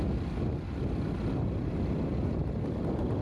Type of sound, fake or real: real